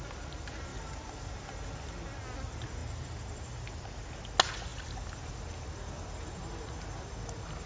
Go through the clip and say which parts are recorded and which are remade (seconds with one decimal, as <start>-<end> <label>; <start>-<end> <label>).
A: 0.0-0.7 recorded; 0.7-1.3 remade; 1.3-2.8 recorded; 2.8-4.1 remade; 4.1-7.7 recorded